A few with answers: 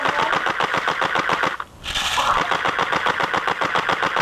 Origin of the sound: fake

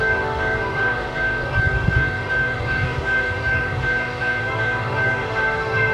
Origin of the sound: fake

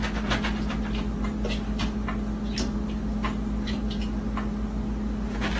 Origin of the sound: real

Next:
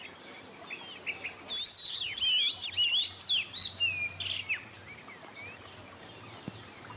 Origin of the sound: real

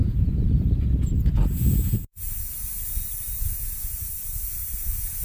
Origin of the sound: fake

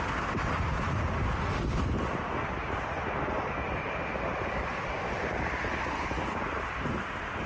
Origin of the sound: real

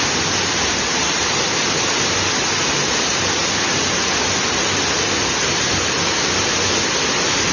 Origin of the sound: real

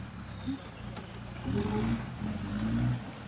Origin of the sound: real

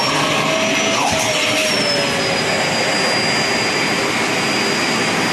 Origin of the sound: real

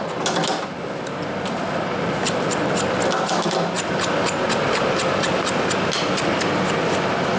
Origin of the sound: real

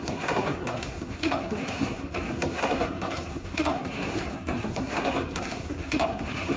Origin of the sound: fake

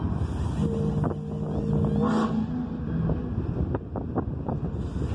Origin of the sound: real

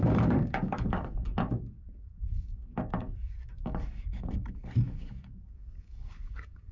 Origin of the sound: fake